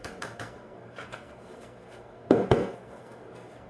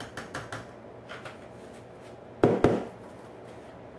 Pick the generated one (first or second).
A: first